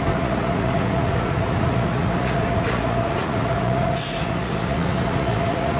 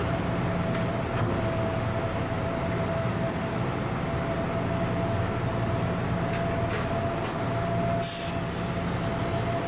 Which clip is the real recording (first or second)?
second